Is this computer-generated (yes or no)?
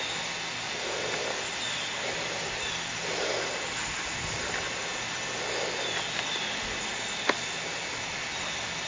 no